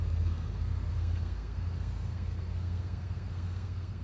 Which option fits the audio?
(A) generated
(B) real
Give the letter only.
A